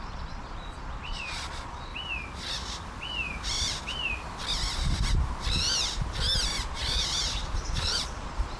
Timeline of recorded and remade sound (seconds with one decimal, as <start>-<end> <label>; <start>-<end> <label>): 0.0-1.9 remade; 1.9-6.7 recorded; 6.7-8.6 remade